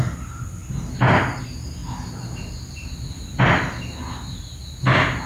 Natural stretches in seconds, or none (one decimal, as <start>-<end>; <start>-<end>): 0.0-5.3